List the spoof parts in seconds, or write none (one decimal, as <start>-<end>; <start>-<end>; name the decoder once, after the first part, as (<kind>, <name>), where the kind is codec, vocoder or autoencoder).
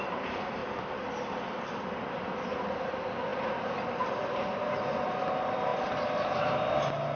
none